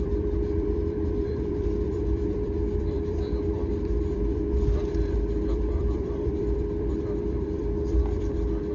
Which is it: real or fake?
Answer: fake